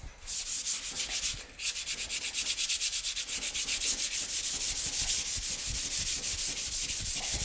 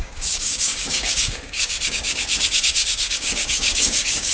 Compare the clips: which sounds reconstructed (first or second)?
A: second